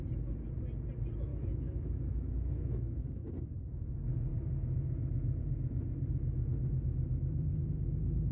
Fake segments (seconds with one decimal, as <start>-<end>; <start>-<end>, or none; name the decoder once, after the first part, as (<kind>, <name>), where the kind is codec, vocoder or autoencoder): 1.3-3.3 (autoencoder, DAC-VAE)